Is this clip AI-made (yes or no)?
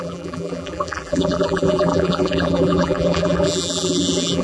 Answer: yes